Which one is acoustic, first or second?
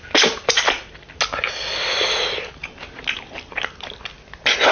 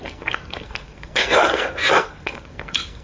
first